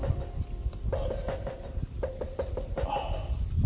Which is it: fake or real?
real